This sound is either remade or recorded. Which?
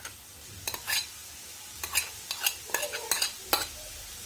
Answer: recorded